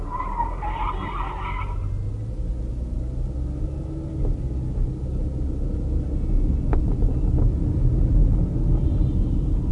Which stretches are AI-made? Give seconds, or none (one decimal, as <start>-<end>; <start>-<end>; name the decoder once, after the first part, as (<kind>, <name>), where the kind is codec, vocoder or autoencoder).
none